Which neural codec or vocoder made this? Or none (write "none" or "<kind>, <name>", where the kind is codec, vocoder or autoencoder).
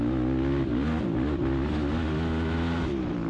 none